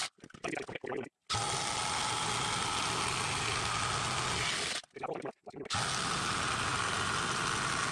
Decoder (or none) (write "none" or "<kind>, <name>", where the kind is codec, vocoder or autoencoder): none